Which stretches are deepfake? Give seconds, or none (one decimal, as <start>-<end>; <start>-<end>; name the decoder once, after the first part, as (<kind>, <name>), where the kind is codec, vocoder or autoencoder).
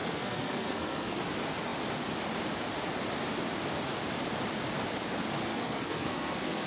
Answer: 0.0-1.2 (codec, SNAC); 5.5-6.7